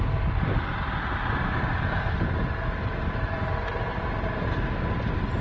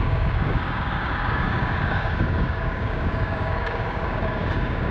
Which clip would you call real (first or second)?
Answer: first